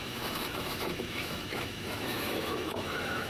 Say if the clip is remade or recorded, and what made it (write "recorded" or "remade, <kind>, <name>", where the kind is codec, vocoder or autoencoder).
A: remade, autoencoder, DAC-VAE